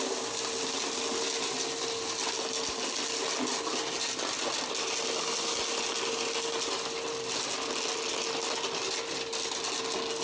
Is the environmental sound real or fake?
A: real